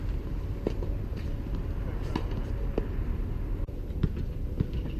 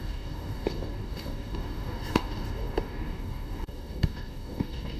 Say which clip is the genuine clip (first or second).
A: first